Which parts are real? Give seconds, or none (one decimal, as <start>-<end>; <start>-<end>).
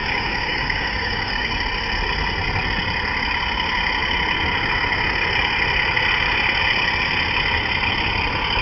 1.5-8.6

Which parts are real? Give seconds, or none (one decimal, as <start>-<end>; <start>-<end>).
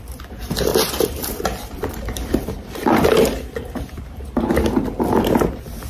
0.0-0.7; 4.2-5.9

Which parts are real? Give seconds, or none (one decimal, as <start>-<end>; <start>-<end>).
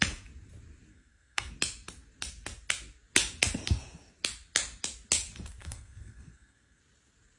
0.0-0.9; 1.5-5.6; 6.8-7.4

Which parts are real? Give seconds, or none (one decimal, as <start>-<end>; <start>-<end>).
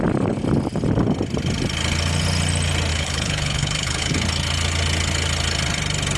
0.0-2.9; 4.1-6.2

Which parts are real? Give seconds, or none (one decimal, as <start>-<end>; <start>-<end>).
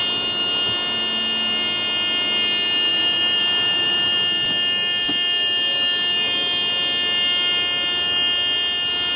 0.0-2.9; 4.1-9.2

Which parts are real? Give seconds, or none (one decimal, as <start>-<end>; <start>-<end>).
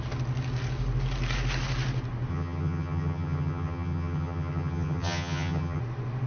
0.0-2.3; 5.8-6.3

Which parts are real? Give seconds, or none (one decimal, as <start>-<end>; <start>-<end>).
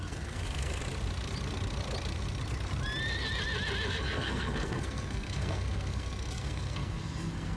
0.8-3.9